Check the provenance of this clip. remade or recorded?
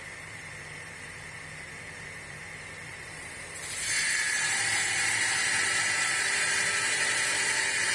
remade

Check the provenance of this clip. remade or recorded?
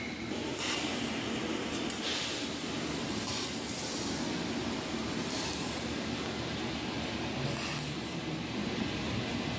recorded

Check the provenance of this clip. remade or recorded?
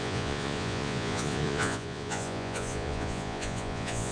remade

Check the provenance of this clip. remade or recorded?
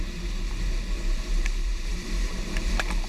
remade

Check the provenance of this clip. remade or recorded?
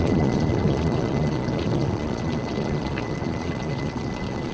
remade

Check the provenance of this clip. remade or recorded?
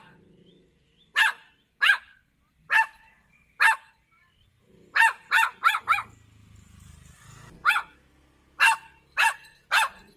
recorded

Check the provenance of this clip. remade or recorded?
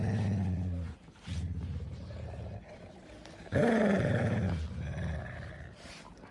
remade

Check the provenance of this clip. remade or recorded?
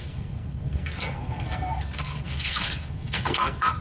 remade